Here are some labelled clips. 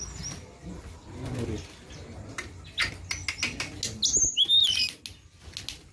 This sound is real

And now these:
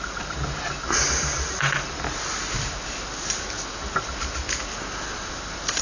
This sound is real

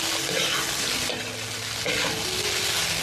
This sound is real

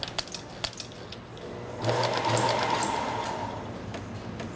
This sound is real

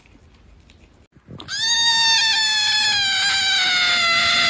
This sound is real